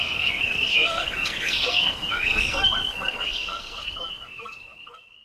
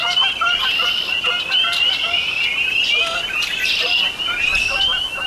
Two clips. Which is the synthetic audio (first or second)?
first